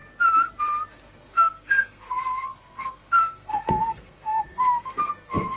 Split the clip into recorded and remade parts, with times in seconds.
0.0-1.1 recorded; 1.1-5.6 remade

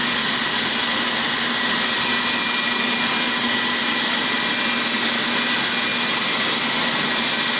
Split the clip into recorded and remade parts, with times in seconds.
0.0-7.6 recorded

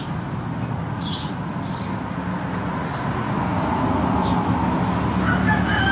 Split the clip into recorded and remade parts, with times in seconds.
0.0-0.8 recorded; 0.8-1.3 remade; 1.3-5.9 recorded

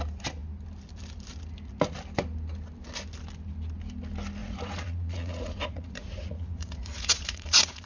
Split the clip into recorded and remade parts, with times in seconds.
0.0-4.4 recorded; 4.4-7.9 remade

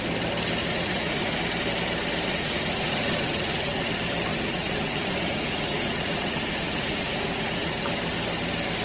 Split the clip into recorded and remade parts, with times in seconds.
0.0-0.6 recorded; 0.6-1.4 remade; 1.4-2.3 recorded; 2.3-3.9 remade; 3.9-4.3 recorded; 4.3-7.9 remade; 7.9-8.8 recorded

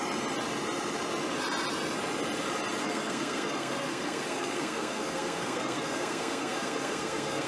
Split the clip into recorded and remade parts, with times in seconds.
0.0-2.8 recorded; 2.8-7.5 remade

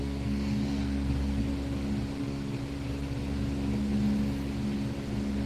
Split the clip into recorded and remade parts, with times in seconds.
0.0-1.4 remade; 1.4-2.2 recorded; 2.2-2.6 remade; 2.6-5.5 recorded